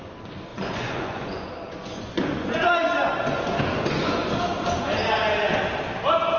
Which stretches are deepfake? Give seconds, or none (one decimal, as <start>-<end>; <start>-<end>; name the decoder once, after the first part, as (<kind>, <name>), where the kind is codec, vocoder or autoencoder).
0.5-4.3 (vocoder, Vocos)